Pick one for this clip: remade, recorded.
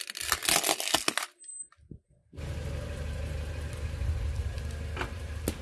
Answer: recorded